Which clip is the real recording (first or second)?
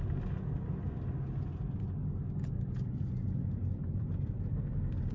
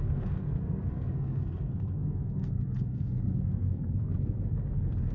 first